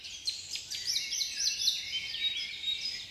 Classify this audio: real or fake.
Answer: fake